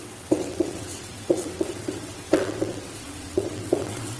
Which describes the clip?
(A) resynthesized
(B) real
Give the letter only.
A